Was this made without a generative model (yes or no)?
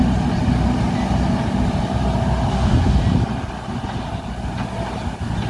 yes